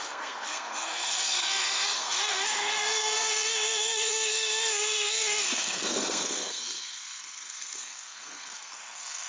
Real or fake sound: fake